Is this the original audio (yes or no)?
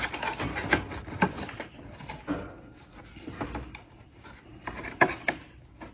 yes